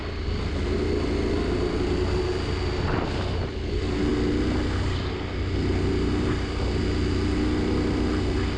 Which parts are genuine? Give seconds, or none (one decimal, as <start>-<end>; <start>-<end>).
0.0-8.6